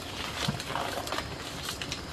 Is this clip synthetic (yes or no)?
no